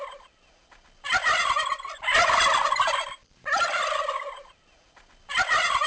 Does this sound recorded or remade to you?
recorded